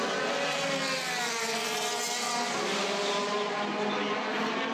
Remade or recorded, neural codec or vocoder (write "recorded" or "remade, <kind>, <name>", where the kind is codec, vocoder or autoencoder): recorded